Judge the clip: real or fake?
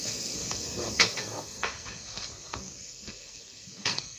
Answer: fake